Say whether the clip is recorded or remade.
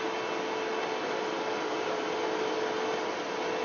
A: recorded